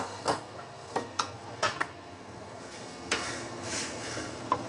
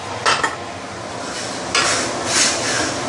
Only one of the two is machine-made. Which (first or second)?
first